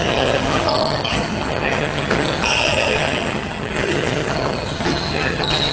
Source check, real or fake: fake